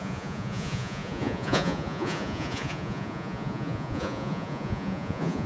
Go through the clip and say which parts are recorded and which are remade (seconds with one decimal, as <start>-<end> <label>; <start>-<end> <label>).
0.0-5.5 remade